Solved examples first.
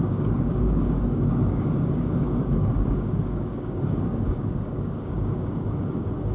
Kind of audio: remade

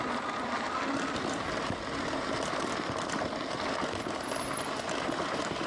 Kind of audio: recorded